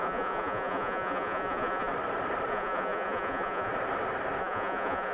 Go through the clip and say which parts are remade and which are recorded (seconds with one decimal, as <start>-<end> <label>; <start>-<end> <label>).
0.0-1.9 remade; 1.9-2.5 recorded; 2.5-3.7 remade; 3.7-4.4 recorded; 4.4-5.1 remade